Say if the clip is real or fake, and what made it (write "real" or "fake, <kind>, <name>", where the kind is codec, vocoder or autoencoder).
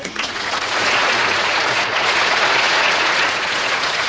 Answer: fake, vocoder, Vocos